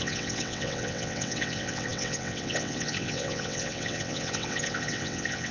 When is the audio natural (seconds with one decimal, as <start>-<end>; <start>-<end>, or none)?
none